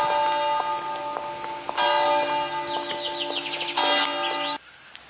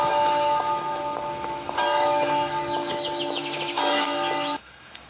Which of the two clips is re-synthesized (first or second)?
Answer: second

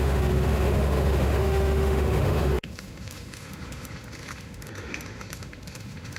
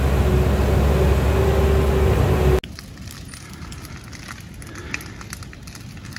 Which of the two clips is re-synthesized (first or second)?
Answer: first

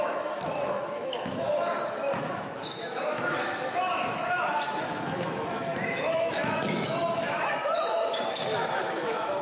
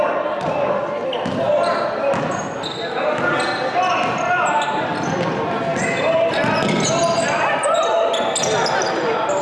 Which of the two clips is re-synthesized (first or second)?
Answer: first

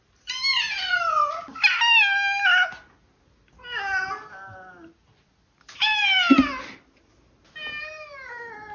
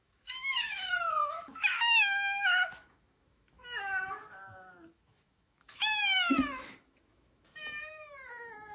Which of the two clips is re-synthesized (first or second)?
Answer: second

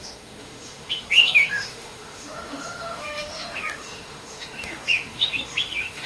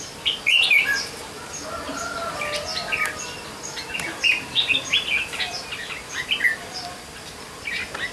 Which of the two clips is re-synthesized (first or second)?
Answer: first